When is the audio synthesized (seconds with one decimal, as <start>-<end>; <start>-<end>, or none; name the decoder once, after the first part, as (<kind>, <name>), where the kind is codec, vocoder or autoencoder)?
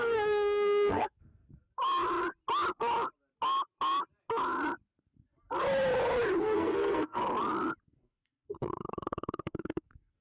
0.0-1.4 (codec, SNAC); 6.4-7.2; 7.8-10.2